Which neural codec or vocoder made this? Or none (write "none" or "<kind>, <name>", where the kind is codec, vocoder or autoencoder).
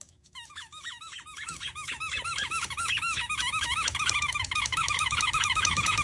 autoencoder, DAC-VAE